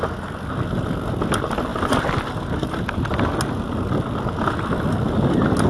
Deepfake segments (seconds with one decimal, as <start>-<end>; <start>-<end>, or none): none

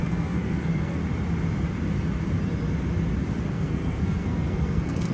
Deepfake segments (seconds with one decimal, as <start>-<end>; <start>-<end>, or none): 0.0-1.0; 3.5-5.1